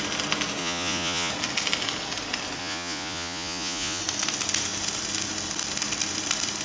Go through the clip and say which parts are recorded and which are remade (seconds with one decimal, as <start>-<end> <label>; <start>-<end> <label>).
0.0-0.6 recorded; 0.6-1.3 remade; 1.3-2.6 recorded; 2.6-4.0 remade; 4.0-6.6 recorded